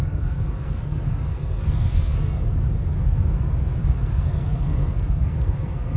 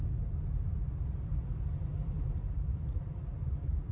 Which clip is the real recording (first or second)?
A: second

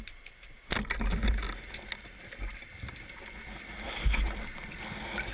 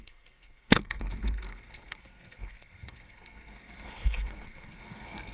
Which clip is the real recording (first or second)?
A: first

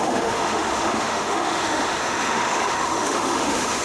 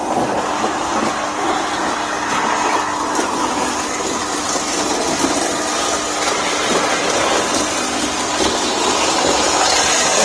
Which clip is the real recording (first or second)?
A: second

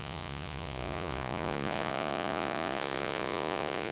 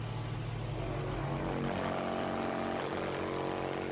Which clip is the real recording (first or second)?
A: second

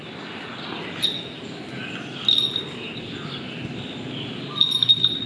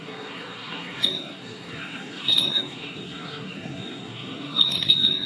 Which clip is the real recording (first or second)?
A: first